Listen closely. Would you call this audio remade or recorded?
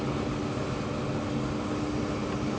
recorded